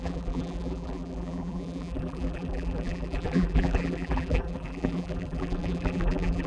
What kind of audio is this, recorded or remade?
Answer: remade